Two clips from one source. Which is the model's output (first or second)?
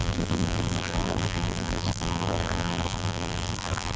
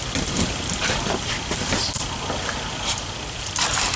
first